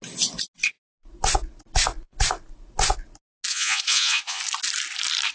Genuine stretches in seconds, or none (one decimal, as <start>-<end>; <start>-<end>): 0.0-3.5; 4.4-5.3